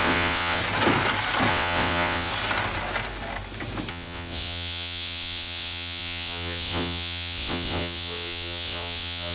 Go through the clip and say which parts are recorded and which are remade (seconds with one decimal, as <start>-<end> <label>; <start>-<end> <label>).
0.0-0.6 remade; 0.6-1.5 recorded; 1.5-2.3 remade; 2.3-3.9 recorded; 3.9-9.3 remade